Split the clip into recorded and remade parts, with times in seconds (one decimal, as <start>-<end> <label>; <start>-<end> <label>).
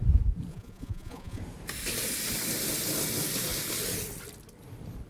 0.0-0.5 recorded; 0.5-1.4 remade; 1.4-5.1 recorded